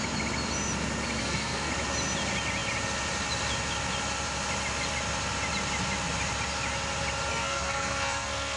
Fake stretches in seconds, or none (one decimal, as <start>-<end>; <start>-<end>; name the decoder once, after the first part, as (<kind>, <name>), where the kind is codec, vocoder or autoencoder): 1.2-1.7 (codec, SNAC); 7.3-8.6